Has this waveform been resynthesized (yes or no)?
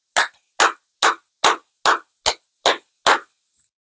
no